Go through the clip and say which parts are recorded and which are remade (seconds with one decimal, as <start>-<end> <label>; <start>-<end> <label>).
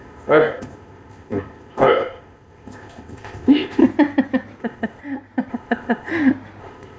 0.0-3.8 remade; 3.8-4.6 recorded; 4.6-5.0 remade; 5.0-5.5 recorded; 5.5-6.1 remade; 6.1-6.6 recorded; 6.6-7.0 remade